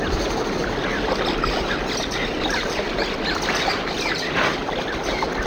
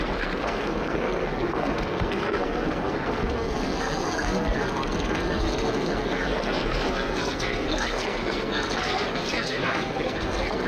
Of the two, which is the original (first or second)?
first